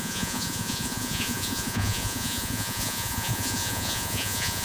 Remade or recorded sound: remade